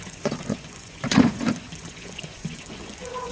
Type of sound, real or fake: fake